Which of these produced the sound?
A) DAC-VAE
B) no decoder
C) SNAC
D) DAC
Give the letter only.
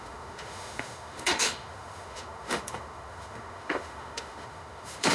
A